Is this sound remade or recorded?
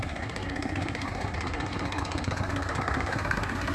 remade